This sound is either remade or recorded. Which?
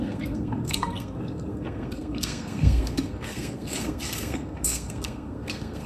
remade